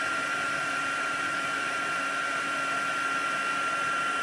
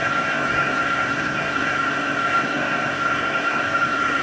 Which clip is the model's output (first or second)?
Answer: second